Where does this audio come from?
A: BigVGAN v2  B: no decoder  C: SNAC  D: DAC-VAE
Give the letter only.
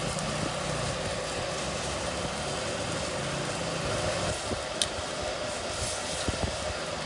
B